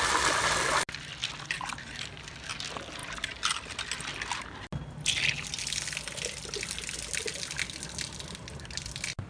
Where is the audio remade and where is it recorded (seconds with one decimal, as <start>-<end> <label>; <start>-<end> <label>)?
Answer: 0.0-9.3 recorded